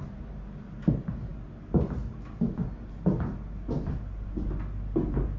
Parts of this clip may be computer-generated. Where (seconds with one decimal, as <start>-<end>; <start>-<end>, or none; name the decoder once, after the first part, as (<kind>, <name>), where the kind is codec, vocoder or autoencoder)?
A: none